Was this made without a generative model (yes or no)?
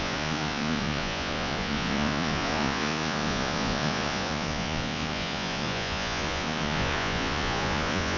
no